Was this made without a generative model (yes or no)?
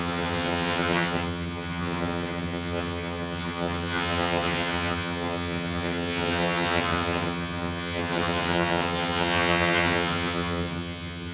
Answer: no